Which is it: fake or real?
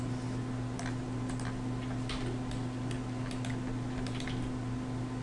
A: real